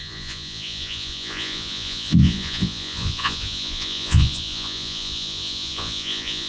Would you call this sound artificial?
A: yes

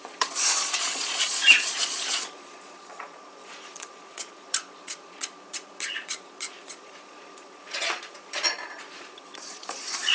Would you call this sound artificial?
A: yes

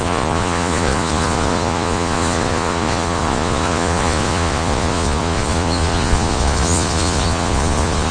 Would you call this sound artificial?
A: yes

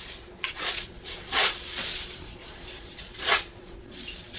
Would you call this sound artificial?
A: yes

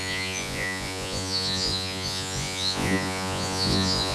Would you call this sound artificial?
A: yes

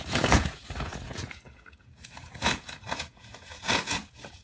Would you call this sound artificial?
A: yes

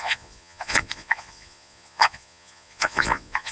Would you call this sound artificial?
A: yes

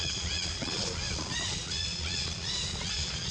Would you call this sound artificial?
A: yes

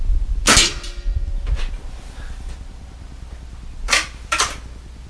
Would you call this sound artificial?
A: no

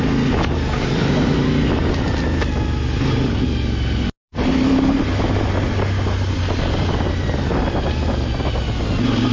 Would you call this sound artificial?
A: no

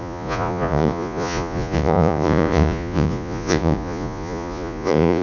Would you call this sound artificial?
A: yes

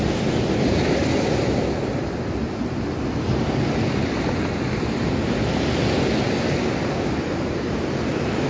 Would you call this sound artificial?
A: no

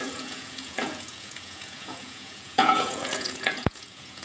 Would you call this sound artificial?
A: yes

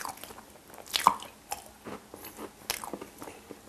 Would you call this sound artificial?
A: no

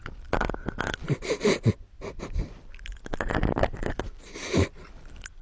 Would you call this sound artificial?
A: no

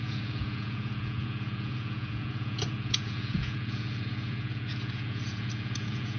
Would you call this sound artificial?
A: yes